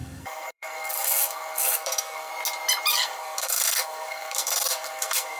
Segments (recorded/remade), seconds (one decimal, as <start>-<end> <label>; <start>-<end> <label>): 0.0-2.3 remade; 2.3-2.9 recorded; 2.9-5.4 remade